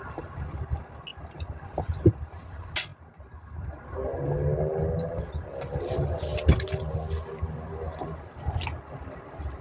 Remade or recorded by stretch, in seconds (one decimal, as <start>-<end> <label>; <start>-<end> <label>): 0.0-9.6 recorded